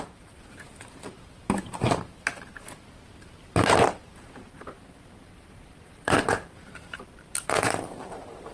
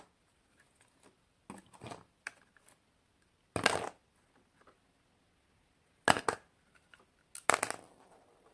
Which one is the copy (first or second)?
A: first